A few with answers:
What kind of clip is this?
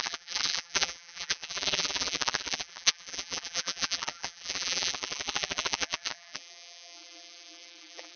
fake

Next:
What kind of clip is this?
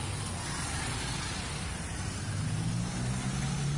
real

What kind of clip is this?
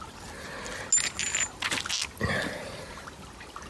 real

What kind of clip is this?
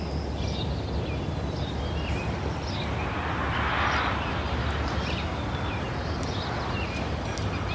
real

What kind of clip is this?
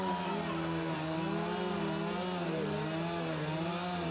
real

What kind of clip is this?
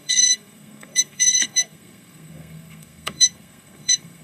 fake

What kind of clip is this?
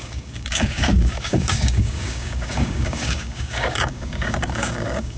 fake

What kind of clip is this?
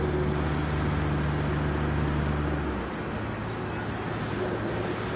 real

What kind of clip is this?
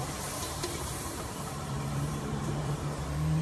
fake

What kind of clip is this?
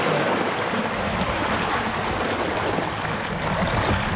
real